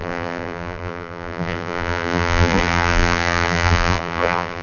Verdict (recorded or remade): remade